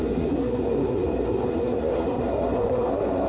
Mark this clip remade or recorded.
remade